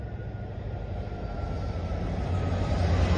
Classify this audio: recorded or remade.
recorded